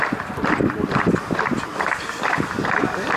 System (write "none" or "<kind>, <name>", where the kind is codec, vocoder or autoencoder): vocoder, BigVGAN v2